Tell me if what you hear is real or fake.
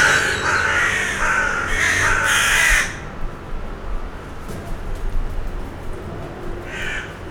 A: real